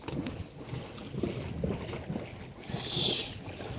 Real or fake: real